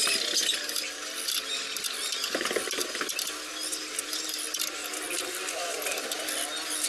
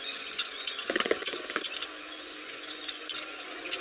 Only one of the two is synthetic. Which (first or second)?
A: second